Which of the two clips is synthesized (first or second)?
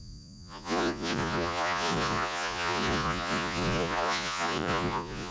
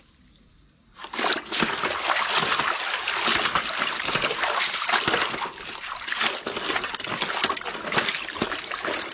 first